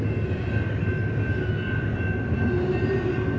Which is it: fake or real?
real